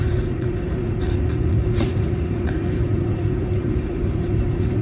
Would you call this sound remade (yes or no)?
yes